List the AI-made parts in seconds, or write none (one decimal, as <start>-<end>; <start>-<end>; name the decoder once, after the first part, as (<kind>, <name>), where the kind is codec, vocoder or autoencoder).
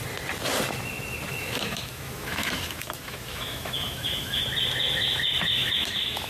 1.3-4.4 (autoencoder, DAC-VAE); 5.5-6.3